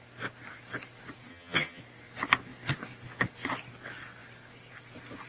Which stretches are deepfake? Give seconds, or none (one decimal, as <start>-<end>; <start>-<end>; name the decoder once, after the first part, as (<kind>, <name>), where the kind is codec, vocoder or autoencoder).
1.3-1.8 (vocoder, HiFi-GAN)

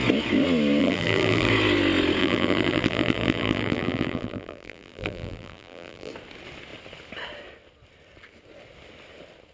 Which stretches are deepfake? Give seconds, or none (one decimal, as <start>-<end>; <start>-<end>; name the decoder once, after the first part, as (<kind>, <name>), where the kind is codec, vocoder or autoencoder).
0.8-1.5 (vocoder, BigVGAN v2); 2.2-6.1

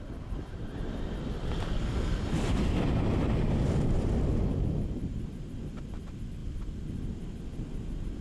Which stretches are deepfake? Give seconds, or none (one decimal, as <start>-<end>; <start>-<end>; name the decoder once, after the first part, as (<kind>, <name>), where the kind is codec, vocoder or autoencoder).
0.0-6.4 (vocoder, BigVGAN v2)

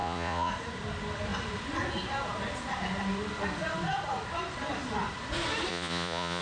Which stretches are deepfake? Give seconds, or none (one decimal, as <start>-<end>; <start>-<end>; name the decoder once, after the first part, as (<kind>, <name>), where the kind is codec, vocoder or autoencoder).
0.0-0.5 (vocoder, Vocos); 5.7-6.4

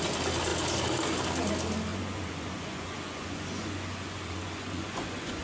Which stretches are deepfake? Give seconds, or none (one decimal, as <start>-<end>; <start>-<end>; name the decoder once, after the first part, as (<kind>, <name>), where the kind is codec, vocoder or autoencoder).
1.9-5.4 (vocoder, Vocos)